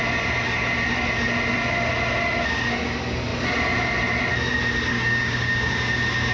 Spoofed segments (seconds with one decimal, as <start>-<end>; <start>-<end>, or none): 4.9-5.7